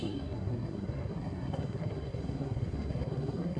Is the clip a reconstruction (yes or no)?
yes